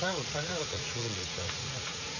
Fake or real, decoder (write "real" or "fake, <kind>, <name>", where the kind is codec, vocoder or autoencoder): fake, vocoder, Vocos